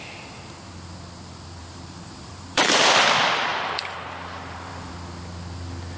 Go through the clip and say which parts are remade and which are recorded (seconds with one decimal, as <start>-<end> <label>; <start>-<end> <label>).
0.0-1.6 recorded; 1.6-2.8 remade; 2.8-3.5 recorded; 3.5-4.9 remade; 4.9-6.0 recorded